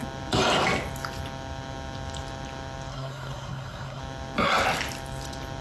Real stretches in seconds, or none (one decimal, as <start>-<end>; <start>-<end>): 0.0-2.9; 4.0-5.6